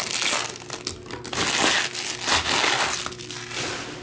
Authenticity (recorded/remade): recorded